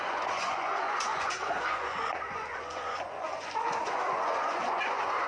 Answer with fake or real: fake